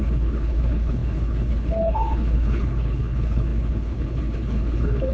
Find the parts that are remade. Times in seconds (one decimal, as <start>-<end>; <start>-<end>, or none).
0.0-5.1